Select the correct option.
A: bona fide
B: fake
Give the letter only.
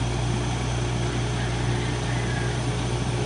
A